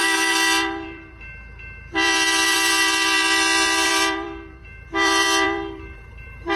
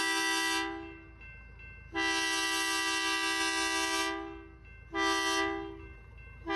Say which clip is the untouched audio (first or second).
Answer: second